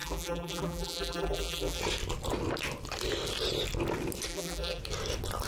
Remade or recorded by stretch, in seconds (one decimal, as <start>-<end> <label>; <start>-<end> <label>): 0.0-1.8 remade; 1.8-4.3 recorded; 4.3-4.8 remade; 4.8-5.5 recorded